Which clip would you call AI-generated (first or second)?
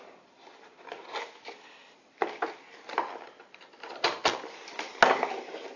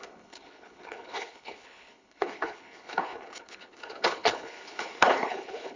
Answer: second